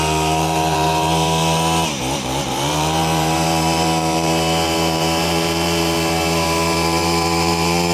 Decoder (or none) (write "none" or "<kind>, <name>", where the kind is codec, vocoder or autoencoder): vocoder, BigVGAN v2